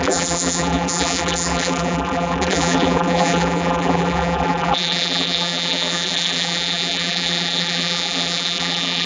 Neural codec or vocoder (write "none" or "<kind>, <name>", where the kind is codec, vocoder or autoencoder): vocoder, BigVGAN v2